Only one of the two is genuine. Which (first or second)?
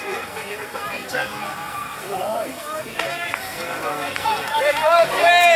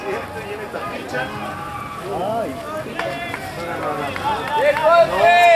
second